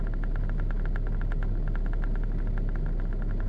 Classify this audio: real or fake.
real